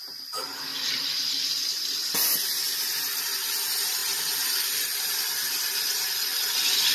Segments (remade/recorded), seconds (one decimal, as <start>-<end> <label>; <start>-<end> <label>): 0.0-0.7 recorded; 0.7-1.2 remade; 1.2-6.3 recorded; 6.3-6.9 remade